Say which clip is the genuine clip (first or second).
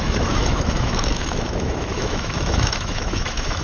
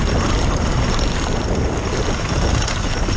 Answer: second